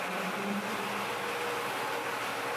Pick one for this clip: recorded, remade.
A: recorded